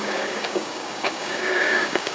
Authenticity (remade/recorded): remade